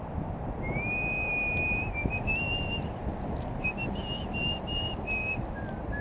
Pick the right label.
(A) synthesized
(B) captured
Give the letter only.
B